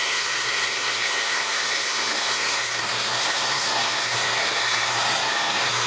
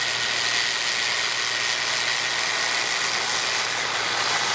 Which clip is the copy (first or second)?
first